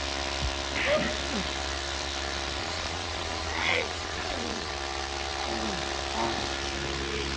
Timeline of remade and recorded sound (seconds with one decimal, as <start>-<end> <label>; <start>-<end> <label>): 0.0-2.6 recorded; 2.6-4.7 remade; 4.7-7.4 recorded